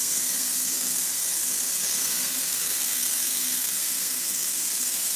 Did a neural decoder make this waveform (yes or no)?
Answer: yes